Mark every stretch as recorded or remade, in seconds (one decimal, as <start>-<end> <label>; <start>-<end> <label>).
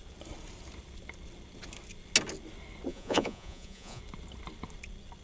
0.0-2.9 recorded; 2.9-4.0 remade; 4.0-5.2 recorded